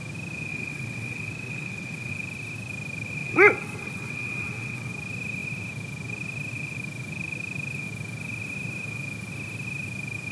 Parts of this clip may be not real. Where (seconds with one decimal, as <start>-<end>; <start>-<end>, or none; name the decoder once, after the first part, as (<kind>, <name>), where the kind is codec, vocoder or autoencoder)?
0.5-2.1 (vocoder, WaveNeXt); 3.2-4.9